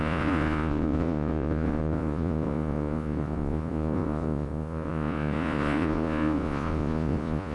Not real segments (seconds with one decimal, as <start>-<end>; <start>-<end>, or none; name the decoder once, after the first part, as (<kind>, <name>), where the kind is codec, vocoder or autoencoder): 0.0-7.5 (vocoder, Vocos)